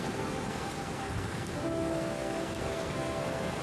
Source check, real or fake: fake